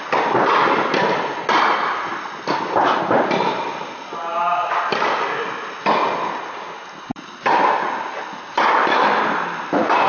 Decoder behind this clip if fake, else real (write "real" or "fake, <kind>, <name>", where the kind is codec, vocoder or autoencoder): real